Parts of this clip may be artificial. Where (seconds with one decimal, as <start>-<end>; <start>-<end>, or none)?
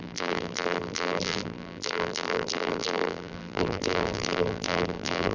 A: 0.0-5.3